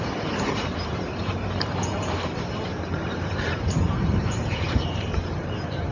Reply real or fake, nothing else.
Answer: fake